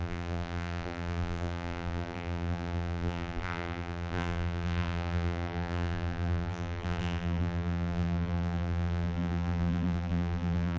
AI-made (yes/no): yes